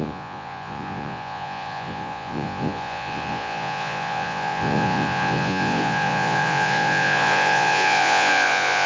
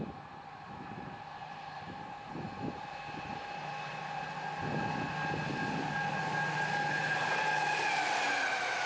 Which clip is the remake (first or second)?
first